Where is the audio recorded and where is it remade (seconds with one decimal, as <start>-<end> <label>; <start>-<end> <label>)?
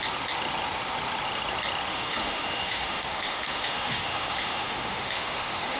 0.0-1.9 recorded; 1.9-5.8 remade